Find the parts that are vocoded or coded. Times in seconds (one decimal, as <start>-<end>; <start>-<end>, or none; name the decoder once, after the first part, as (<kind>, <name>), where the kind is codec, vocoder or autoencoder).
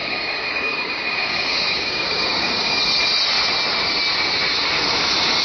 0.0-2.8 (codec, DAC)